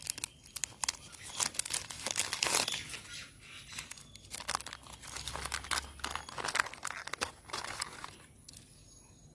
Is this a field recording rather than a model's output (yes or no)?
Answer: yes